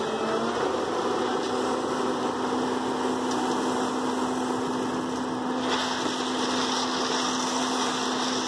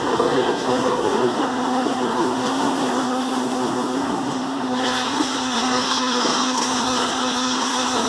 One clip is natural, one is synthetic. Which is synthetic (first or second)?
second